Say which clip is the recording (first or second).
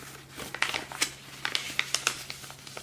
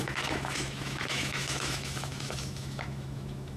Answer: first